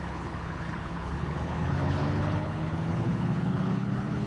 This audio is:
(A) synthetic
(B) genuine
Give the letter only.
A